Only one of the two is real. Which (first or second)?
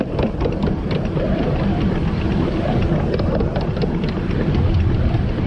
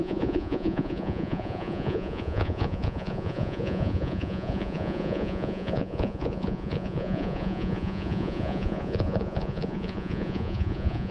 first